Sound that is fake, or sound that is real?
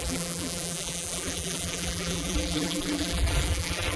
fake